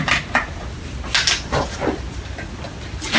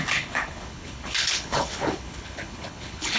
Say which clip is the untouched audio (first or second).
first